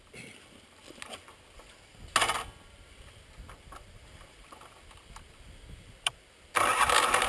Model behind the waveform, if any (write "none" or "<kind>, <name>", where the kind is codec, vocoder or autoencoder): none